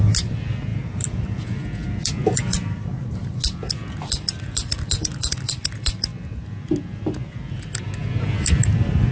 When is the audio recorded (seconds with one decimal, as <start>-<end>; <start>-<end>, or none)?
0.0-9.1